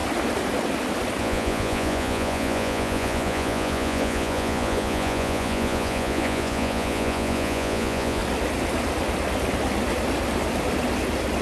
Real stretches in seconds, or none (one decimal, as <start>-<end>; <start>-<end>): 0.0-1.2; 8.2-11.4